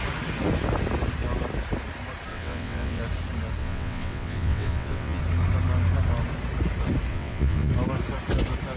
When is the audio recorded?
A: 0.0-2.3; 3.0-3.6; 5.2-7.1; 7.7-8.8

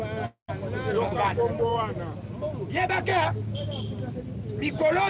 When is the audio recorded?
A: 0.0-5.1

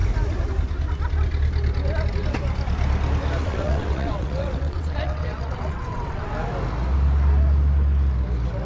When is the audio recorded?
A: 0.0-3.4; 6.3-8.7

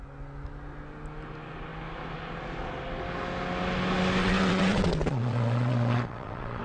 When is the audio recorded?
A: 0.0-4.2

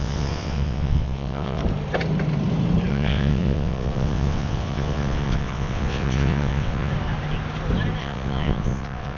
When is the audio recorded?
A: 1.6-2.9; 6.9-8.0

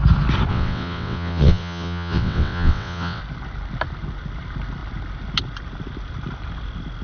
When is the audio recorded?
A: 0.0-0.5; 3.2-7.0